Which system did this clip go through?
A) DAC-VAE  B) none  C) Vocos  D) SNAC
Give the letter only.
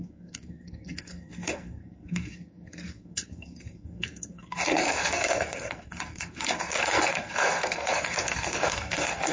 D